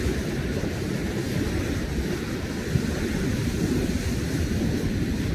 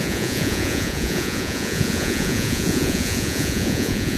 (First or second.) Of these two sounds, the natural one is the first